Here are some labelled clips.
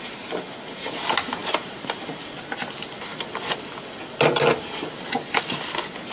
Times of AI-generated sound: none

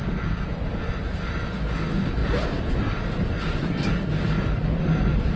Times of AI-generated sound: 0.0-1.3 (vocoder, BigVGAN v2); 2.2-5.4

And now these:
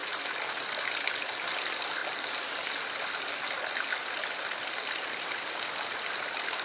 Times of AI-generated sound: none

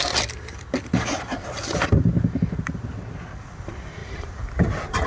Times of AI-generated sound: 4.0-4.5 (vocoder, BigVGAN v2)

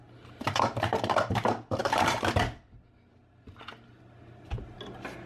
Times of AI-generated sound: none

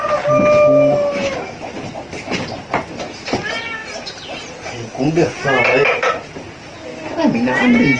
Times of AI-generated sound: none

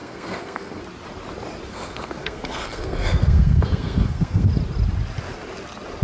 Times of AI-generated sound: 0.0-0.8 (codec, SNAC); 1.7-4.5

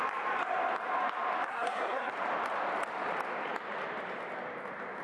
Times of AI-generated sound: 1.5-2.1 (codec, SNAC)